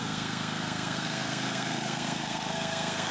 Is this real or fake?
fake